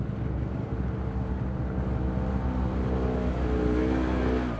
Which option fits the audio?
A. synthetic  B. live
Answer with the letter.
B